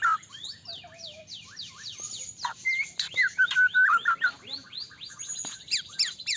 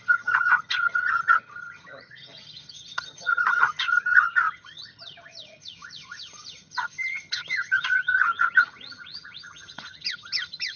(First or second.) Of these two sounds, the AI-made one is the second